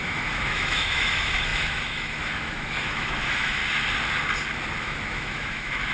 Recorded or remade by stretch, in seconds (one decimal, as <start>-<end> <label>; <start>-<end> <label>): 0.0-3.6 remade; 3.6-4.8 recorded; 4.8-5.9 remade